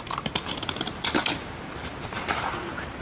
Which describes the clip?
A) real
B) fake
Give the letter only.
B